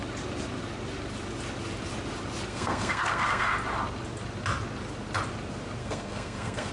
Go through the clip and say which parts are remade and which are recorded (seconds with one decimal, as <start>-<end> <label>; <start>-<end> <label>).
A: 0.0-2.5 recorded; 2.5-3.5 remade; 3.5-5.8 recorded; 5.8-6.7 remade

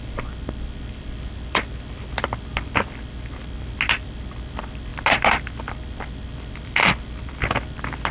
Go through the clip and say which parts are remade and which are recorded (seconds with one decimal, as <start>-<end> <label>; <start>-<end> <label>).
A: 0.0-8.1 recorded

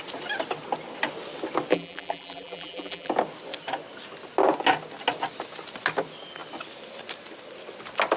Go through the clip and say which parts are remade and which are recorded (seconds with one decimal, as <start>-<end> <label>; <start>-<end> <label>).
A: 0.0-1.7 recorded; 1.7-3.1 remade; 3.1-8.2 recorded

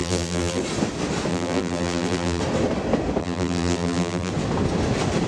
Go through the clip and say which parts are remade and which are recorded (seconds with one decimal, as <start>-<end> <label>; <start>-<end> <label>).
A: 0.0-0.6 remade; 0.6-1.3 recorded; 1.3-2.4 remade; 2.4-3.2 recorded; 3.2-4.3 remade; 4.3-5.3 recorded